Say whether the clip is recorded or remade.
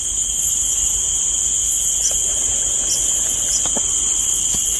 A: recorded